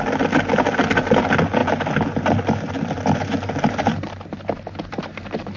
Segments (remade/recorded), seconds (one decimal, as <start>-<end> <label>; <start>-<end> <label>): 0.0-5.6 recorded